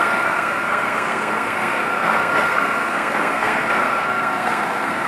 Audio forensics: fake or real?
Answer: fake